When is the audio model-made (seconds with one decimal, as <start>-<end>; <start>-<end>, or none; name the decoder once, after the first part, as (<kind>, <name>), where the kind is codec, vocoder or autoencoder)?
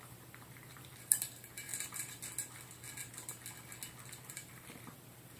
0.0-1.7 (vocoder, BigVGAN v2); 4.3-5.4